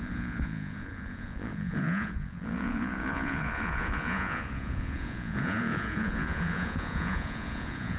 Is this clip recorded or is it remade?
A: remade